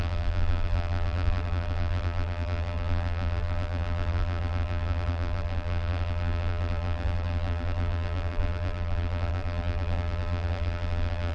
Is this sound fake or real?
fake